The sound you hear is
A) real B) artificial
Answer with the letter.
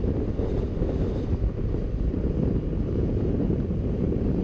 B